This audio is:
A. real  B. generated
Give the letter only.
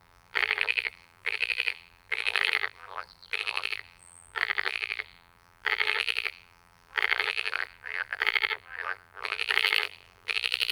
B